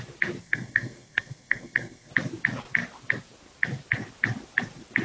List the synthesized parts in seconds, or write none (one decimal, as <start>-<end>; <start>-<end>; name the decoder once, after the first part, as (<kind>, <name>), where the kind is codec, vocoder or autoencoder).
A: 0.4-2.1 (codec, SNAC)